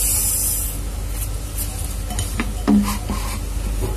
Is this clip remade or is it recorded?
recorded